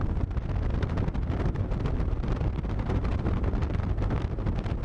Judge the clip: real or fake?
real